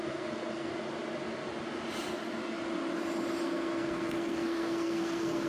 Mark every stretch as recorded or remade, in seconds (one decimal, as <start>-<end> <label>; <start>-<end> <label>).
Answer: 0.0-0.7 remade; 0.7-3.4 recorded; 3.4-5.5 remade